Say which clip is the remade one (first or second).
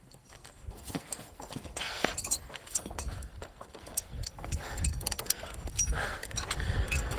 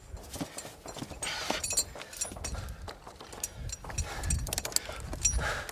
first